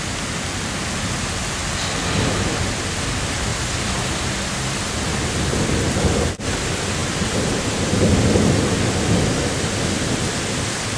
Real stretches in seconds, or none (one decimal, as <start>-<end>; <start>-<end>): 0.0-11.0

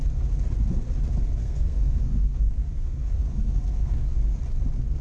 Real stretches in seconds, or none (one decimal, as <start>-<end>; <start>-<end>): 0.0-1.4; 4.4-5.0

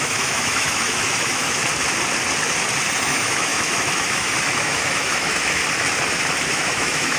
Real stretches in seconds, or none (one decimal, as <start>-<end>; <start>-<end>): 1.6-3.0; 5.6-6.5

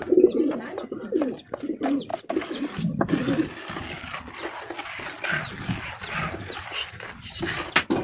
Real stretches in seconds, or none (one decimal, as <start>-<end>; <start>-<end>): 0.0-8.0

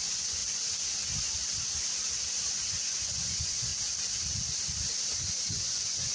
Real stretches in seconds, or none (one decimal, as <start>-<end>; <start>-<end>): 0.4-2.5; 3.7-5.5

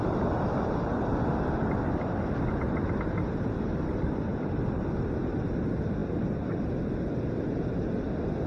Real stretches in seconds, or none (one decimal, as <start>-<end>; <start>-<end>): 0.0-4.3; 4.8-8.5

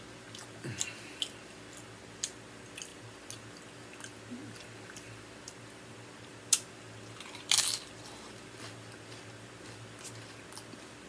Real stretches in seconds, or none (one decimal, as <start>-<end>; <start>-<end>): 0.0-11.1

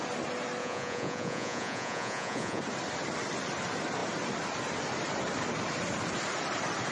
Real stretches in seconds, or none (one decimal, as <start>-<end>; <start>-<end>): 0.0-0.6; 2.6-6.9